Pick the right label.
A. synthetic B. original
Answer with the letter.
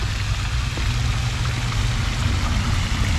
B